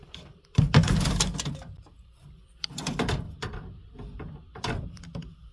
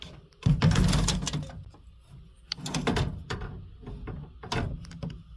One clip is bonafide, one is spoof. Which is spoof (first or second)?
first